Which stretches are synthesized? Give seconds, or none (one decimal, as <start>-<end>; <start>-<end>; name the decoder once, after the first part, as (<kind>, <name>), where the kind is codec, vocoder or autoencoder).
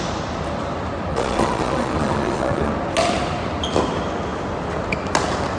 1.1-2.7 (vocoder, Vocos)